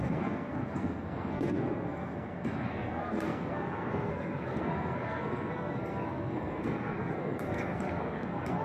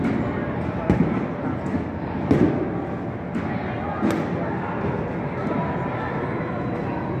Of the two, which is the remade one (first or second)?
first